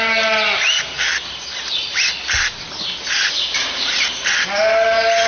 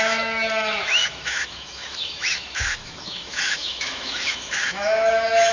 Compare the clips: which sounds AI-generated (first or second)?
second